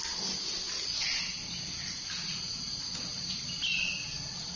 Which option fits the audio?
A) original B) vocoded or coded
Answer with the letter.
A